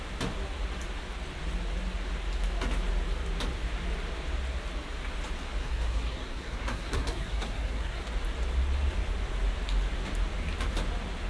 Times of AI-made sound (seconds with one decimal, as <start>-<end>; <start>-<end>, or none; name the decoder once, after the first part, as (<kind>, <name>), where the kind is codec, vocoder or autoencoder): 5.6-8.0 (codec, SNAC)